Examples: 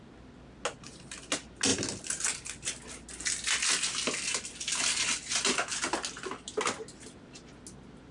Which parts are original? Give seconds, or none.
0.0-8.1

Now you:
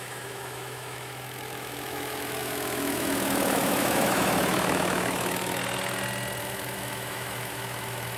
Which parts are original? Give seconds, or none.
5.6-6.4

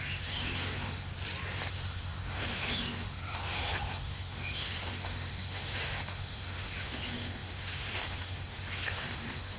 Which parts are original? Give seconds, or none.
1.1-1.7